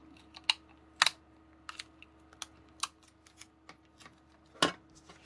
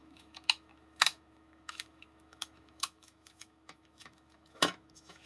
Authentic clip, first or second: first